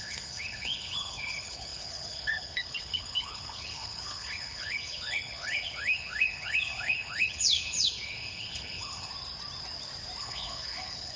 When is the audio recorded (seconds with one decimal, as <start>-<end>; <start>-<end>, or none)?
9.1-10.2